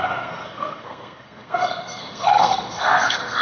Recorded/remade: remade